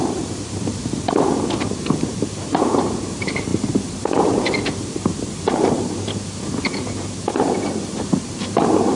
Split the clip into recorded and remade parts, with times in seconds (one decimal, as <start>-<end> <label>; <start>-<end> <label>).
0.0-0.7 remade; 0.7-2.0 recorded; 2.0-9.0 remade